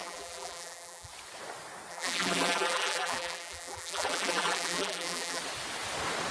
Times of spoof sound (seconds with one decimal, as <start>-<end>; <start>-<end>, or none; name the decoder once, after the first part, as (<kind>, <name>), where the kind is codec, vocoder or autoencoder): 0.0-1.1 (vocoder, BigVGAN v2); 1.9-5.4